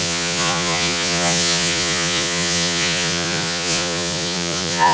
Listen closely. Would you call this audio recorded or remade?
remade